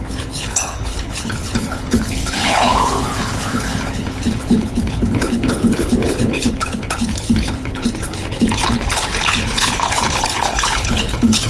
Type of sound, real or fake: fake